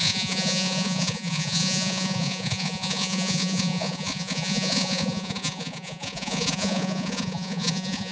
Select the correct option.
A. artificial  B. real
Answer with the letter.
A